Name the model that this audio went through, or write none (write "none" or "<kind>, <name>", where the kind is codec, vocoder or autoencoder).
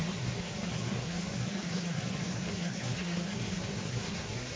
codec, SNAC